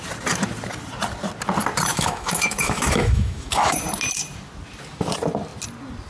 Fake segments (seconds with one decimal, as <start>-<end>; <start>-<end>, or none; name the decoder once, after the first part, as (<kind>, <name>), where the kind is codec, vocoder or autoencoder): 1.9-3.8 (autoencoder, DAC-VAE)

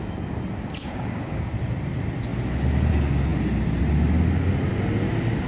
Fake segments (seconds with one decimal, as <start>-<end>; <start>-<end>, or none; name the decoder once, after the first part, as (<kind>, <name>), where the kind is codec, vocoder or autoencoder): 0.8-1.5 (codec, DAC)

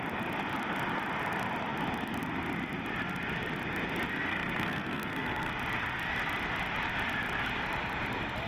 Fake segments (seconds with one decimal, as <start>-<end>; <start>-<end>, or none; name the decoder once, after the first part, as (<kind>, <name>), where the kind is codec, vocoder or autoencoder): 4.3-5.5 (codec, SNAC)

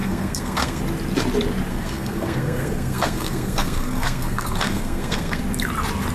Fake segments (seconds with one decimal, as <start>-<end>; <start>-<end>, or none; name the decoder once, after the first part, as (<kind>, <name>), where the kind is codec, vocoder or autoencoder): 0.0-0.8 (codec, SNAC); 1.7-5.4

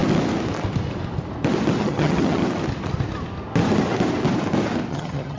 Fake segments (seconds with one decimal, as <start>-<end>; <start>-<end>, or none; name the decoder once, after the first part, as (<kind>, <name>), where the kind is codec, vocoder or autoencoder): 1.8-2.4 (vocoder, HiFi-GAN); 4.9-5.4

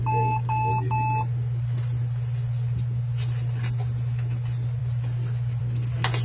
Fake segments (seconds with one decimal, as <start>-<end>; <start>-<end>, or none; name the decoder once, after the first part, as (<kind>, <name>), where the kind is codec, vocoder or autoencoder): 0.0-0.7 (codec, DAC)

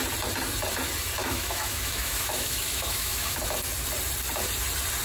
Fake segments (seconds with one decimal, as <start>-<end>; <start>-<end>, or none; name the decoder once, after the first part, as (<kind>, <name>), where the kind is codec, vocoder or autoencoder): 1.2-3.4 (autoencoder, DAC-VAE)

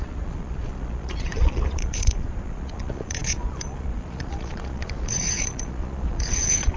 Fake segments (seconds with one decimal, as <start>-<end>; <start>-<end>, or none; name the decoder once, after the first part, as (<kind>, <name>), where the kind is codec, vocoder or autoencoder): 0.0-6.8 (vocoder, Vocos)